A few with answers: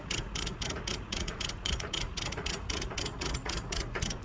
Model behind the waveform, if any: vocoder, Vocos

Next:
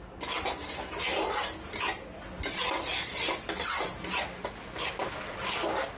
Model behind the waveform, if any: none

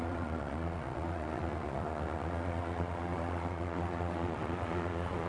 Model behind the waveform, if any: vocoder, Vocos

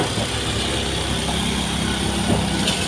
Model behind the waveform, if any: none